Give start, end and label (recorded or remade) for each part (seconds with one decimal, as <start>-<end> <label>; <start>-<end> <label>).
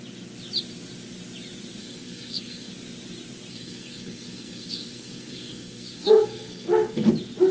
0.0-1.8 recorded; 1.8-2.7 remade; 2.7-3.5 recorded; 3.5-7.1 remade; 7.1-7.5 recorded